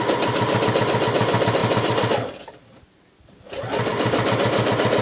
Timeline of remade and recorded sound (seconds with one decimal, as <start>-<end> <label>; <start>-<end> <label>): 0.0-5.0 recorded